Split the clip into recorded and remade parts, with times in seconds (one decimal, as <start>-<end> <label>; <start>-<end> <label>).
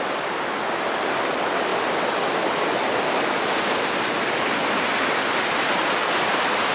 0.0-6.7 recorded